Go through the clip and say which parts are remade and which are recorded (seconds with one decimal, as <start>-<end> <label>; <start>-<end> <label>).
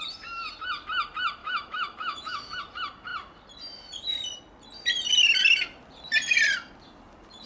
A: 0.0-1.4 recorded; 1.4-2.6 remade; 2.6-7.5 recorded